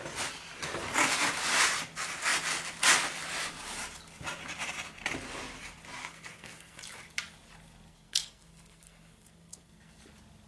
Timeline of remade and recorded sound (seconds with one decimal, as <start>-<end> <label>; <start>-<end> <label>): 0.0-6.0 recorded; 6.0-6.8 remade; 6.8-7.9 recorded; 7.9-10.0 remade; 10.0-10.5 recorded